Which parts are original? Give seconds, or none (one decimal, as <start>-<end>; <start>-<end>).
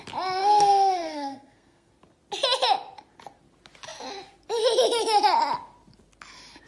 0.0-0.4; 1.9-6.7